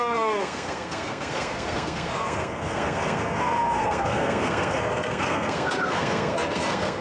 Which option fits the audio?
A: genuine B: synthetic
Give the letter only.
B